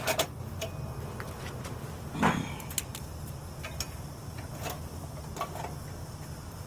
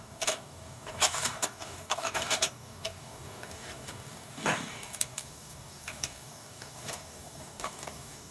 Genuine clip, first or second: first